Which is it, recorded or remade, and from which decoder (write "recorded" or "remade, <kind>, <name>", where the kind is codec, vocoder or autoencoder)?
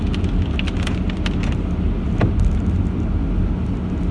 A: recorded